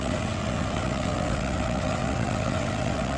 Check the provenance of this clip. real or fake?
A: fake